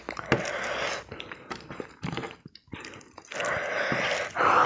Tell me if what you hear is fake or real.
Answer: real